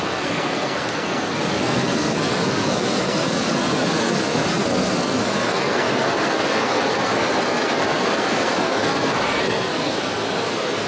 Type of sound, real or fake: fake